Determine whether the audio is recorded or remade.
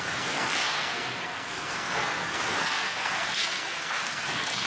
remade